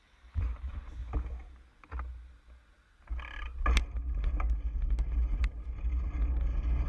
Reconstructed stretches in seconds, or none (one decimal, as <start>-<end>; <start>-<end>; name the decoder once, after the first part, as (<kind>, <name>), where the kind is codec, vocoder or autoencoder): none